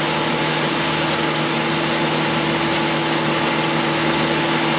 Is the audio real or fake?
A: real